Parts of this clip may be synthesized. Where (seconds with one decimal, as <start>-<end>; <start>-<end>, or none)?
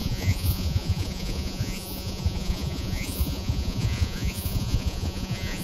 0.0-5.6